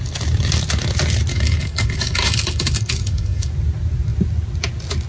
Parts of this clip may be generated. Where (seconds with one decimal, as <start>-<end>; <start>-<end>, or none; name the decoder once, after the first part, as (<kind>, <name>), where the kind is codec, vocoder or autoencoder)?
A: 1.3-3.5 (codec, DAC)